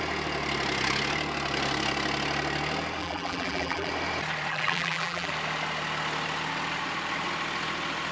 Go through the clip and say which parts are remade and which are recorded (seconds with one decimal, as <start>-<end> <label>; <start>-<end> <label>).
0.0-3.0 recorded; 3.0-3.9 remade; 3.9-4.5 recorded; 4.5-5.3 remade; 5.3-8.1 recorded